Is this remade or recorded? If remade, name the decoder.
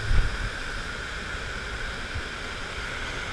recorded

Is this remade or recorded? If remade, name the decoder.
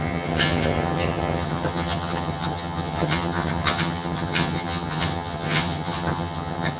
remade, vocoder, HiFi-GAN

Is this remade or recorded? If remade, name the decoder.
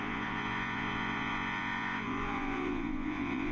remade, vocoder, Vocos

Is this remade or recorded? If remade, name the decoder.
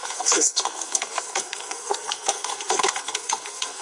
remade, codec, SNAC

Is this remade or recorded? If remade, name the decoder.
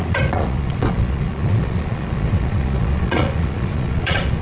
remade, vocoder, Vocos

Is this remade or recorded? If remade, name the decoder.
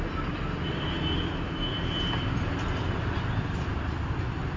recorded